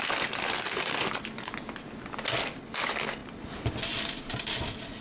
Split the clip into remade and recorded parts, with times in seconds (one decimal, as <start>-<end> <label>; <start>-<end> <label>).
0.0-5.0 recorded